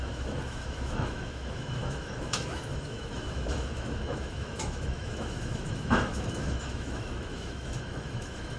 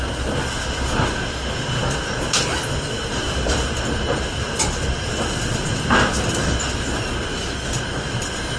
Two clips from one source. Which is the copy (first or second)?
first